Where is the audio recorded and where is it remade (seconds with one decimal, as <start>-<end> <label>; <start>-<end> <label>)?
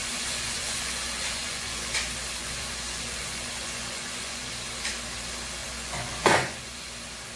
0.0-1.9 remade; 1.9-2.4 recorded; 2.4-4.5 remade; 4.5-5.6 recorded; 5.6-6.9 remade; 6.9-7.4 recorded